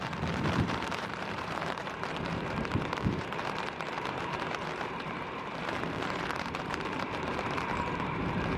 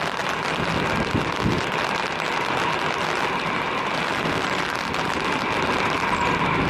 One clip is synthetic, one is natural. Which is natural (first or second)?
second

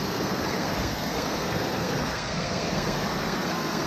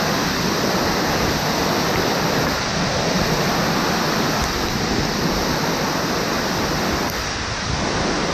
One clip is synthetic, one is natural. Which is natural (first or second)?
second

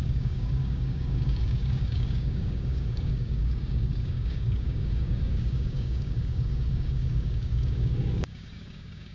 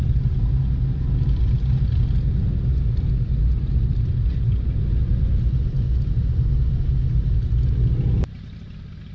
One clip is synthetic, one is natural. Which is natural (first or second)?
second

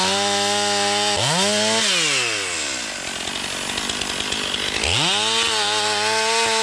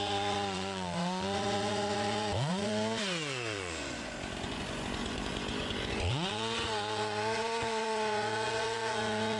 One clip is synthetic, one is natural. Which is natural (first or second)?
first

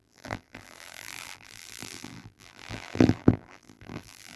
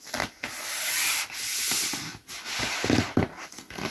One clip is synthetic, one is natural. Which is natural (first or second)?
second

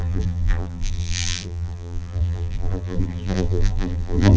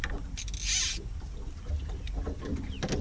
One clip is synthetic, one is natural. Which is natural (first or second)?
second